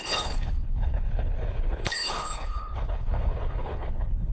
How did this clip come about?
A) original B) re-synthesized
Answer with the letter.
B